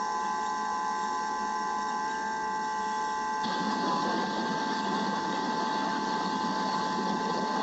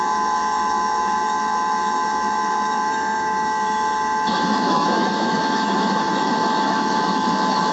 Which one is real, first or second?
first